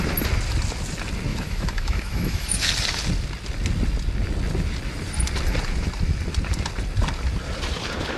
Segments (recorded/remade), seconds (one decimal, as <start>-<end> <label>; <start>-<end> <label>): 0.0-1.3 recorded; 1.3-2.7 remade; 2.7-8.2 recorded